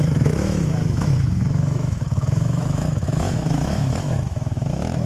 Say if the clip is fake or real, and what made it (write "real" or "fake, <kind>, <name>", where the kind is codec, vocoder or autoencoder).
fake, autoencoder, DAC-VAE